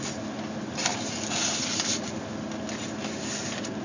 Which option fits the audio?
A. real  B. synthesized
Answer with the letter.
A